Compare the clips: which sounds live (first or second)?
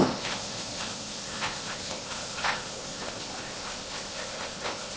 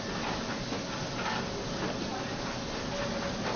second